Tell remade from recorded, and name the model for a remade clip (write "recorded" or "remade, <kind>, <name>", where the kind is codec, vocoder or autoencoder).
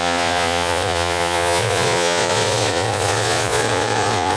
remade, vocoder, Vocos